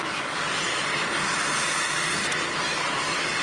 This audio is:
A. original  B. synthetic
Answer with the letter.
A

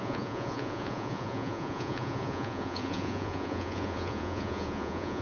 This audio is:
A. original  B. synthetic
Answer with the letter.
B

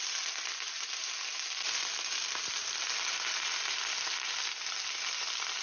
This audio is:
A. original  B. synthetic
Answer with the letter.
A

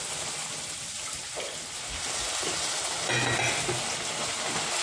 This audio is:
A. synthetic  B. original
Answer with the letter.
B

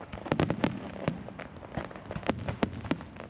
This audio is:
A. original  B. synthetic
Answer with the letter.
A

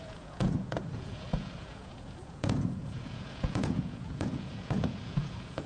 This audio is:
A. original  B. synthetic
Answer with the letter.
B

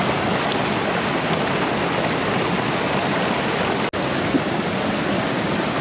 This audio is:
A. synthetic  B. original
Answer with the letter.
B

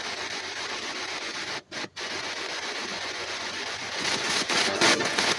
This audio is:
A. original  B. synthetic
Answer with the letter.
B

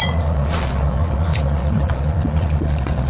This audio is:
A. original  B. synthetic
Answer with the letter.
B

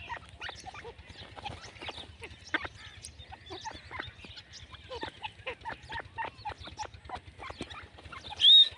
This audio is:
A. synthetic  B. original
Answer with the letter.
B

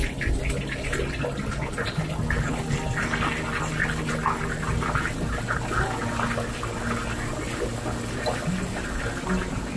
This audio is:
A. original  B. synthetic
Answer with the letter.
A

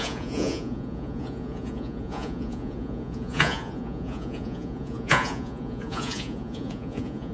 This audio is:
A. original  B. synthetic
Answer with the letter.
B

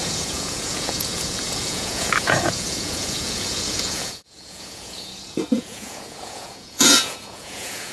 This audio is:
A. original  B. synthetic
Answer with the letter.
B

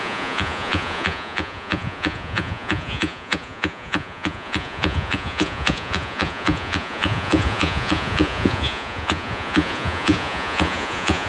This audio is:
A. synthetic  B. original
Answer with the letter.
A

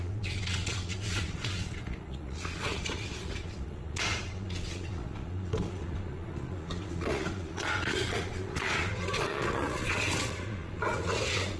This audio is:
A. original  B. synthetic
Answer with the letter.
B